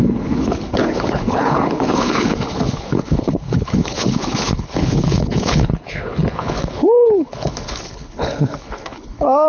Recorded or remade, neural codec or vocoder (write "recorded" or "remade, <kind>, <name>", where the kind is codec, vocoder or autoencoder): remade, codec, HILCodec